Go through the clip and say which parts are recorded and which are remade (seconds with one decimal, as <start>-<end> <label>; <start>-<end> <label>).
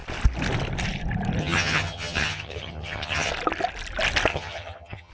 0.0-1.4 recorded; 1.4-3.3 remade; 3.3-4.3 recorded; 4.3-5.1 remade